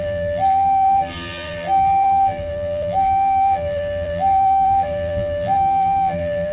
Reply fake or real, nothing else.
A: fake